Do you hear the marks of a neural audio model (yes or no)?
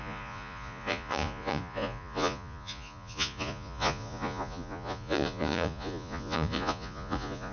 yes